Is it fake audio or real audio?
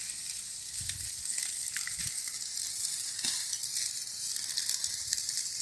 real